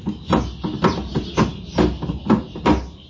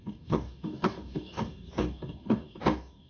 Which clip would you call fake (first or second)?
second